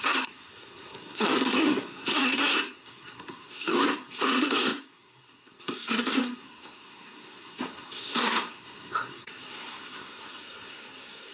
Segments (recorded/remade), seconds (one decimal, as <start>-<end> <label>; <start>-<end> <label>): 0.0-11.3 remade